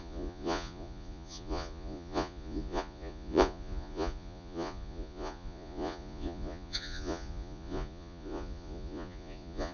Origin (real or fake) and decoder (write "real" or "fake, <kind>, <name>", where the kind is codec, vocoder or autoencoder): fake, vocoder, Vocos